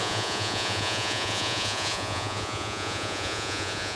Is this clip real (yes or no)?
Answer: no